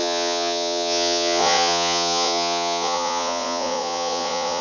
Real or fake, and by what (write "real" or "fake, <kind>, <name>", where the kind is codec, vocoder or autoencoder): fake, vocoder, Vocos